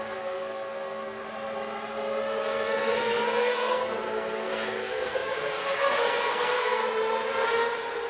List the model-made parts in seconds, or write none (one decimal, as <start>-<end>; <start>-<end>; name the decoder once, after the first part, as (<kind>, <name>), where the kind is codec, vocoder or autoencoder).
0.0-1.2 (codec, SNAC); 2.4-6.8